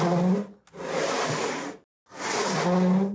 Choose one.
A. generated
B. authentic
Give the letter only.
B